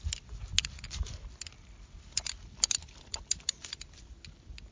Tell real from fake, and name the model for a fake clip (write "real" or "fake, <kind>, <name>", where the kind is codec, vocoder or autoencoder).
real